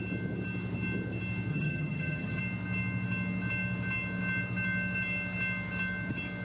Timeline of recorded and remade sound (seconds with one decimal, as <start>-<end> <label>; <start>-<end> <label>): 0.0-1.5 recorded; 1.5-2.4 remade; 2.4-6.4 recorded